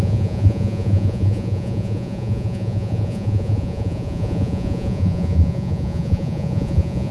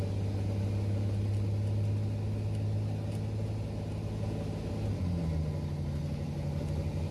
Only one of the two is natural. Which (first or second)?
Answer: second